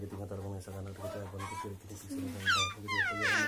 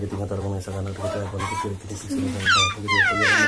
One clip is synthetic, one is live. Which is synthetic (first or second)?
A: second